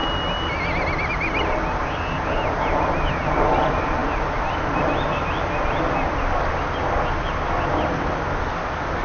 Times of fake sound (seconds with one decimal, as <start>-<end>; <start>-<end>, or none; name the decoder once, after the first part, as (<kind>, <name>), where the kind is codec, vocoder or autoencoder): none